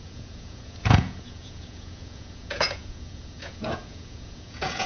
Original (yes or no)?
no